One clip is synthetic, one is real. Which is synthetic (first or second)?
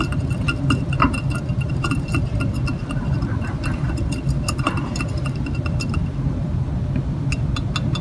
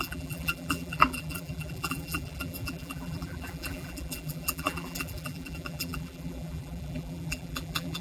second